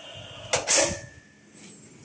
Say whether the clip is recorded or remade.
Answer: recorded